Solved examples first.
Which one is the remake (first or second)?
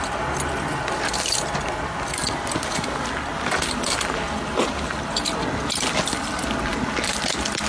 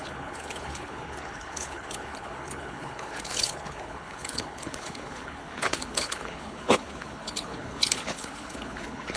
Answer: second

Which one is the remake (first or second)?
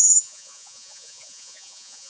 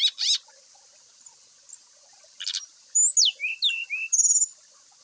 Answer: first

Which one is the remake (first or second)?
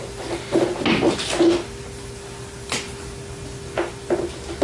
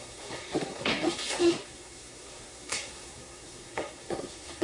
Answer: second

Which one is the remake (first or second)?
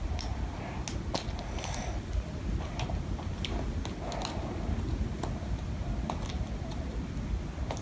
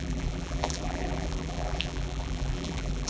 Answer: second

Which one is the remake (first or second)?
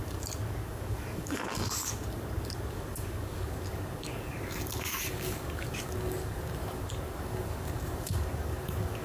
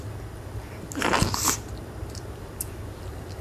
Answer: first